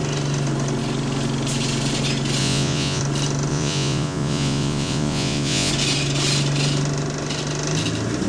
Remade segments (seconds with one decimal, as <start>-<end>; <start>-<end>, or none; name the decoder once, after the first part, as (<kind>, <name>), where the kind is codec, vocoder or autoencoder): 2.4-3.0 (vocoder, Vocos); 3.5-5.7